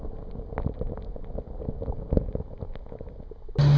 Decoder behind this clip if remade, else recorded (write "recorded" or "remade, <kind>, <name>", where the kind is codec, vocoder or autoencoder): recorded